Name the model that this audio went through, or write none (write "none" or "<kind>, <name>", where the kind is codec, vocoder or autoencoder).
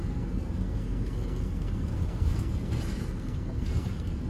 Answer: codec, SNAC